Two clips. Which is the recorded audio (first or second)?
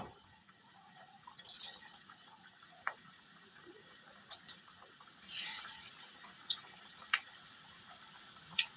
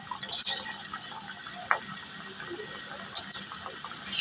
second